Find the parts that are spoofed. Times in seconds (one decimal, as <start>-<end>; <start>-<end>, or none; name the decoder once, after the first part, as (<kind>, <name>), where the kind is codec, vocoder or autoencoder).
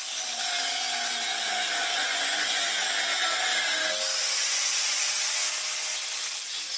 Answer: 1.3-2.6 (vocoder, Vocos); 4.2-5.0